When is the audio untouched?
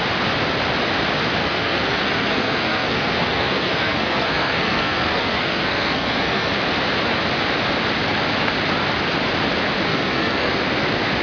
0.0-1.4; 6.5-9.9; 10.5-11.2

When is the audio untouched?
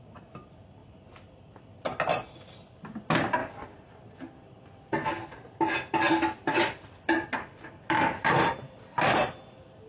0.0-9.9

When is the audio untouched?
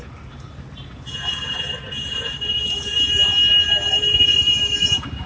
3.3-3.9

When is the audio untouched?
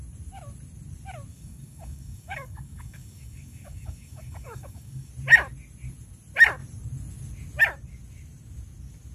0.0-1.3; 5.1-9.1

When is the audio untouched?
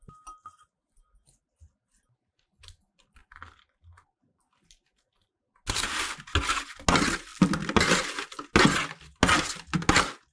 0.0-10.3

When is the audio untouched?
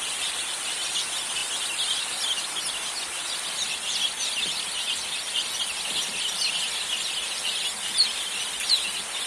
0.0-9.3